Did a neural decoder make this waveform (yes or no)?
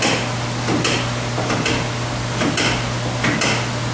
no